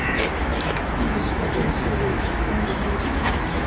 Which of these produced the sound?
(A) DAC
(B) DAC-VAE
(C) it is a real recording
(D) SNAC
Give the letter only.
B